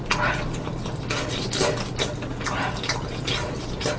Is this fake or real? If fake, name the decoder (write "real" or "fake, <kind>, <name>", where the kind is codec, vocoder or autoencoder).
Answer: real